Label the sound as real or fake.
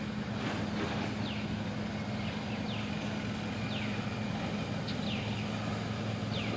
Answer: real